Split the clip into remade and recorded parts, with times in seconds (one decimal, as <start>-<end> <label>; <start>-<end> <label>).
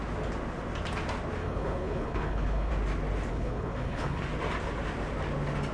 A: 0.0-1.4 recorded; 1.4-2.7 remade; 2.7-3.3 recorded; 3.3-4.2 remade; 4.2-5.7 recorded